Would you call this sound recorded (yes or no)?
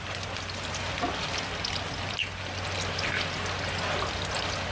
yes